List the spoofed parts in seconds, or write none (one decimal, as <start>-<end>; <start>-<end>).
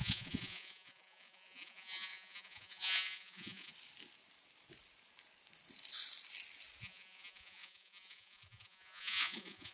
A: 0.0-3.7; 6.8-9.7